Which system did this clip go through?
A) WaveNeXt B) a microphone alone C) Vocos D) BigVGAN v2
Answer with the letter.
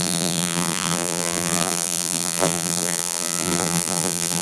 D